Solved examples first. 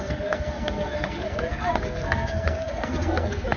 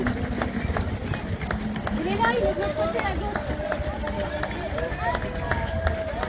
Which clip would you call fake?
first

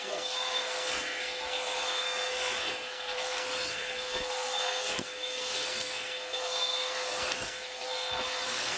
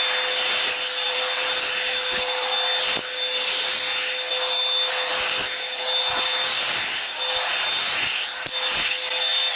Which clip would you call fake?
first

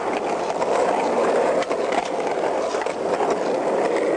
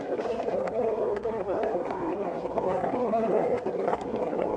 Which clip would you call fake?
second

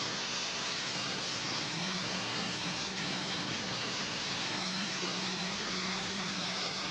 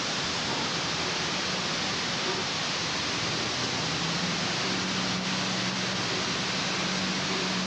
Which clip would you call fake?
first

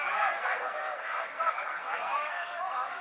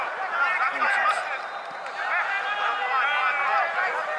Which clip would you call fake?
first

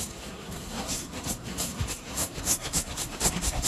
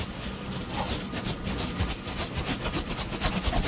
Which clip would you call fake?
first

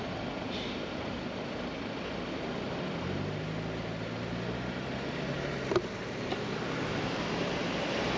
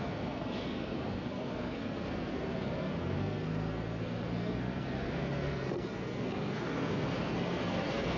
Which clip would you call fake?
second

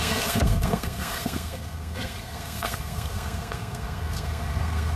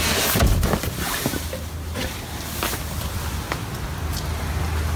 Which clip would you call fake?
first